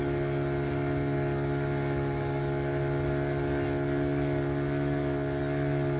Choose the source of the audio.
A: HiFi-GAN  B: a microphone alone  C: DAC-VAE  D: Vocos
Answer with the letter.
B